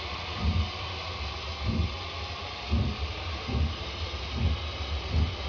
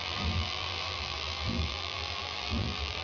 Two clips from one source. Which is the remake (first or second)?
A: second